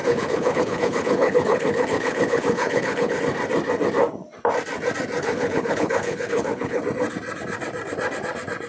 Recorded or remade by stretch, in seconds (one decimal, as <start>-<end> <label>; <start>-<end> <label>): 0.0-3.2 remade; 3.2-5.2 recorded; 5.2-6.8 remade; 6.8-8.7 recorded